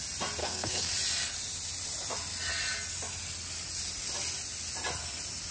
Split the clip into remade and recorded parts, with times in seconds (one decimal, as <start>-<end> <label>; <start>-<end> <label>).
0.0-0.4 recorded; 0.4-0.9 remade; 0.9-5.5 recorded